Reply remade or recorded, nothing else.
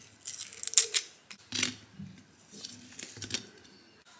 recorded